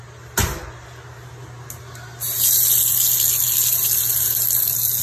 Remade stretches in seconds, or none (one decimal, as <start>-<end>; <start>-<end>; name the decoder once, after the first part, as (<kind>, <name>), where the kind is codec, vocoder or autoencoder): none